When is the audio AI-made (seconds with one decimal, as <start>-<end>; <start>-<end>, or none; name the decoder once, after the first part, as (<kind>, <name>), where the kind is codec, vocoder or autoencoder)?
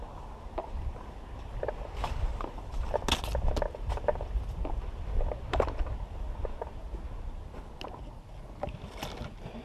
2.3-3.0 (vocoder, BigVGAN v2)